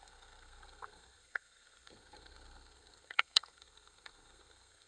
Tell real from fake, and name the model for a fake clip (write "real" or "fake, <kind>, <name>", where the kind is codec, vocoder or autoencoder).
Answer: fake, codec, SNAC